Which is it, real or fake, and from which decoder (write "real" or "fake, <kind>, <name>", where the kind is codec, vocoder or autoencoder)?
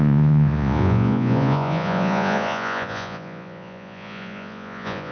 fake, vocoder, Vocos